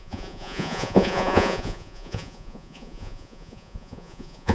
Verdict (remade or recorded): remade